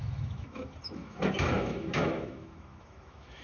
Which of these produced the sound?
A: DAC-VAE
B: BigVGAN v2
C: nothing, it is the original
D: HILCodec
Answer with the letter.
A